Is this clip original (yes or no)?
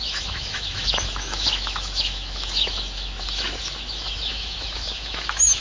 no